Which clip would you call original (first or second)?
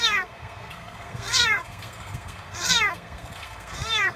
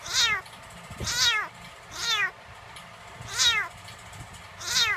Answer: second